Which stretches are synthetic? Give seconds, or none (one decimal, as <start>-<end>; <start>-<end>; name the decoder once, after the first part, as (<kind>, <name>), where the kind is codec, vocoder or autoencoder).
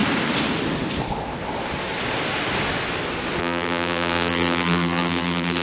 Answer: 3.4-5.6 (vocoder, BigVGAN v2)